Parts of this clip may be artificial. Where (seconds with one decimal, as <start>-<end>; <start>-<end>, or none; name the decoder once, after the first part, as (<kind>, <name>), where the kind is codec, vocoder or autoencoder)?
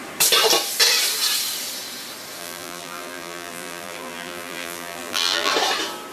2.4-5.5 (vocoder, BigVGAN v2)